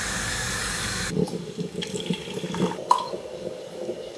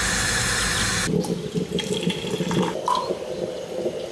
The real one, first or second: second